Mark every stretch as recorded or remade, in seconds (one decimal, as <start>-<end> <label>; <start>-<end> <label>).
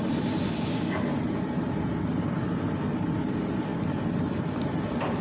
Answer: 0.0-5.2 recorded